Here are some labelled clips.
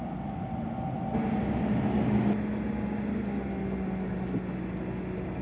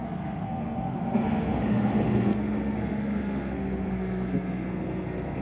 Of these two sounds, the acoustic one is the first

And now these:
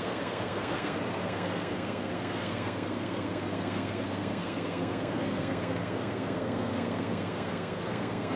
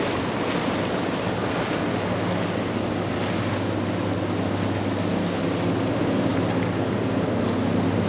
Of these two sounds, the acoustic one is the second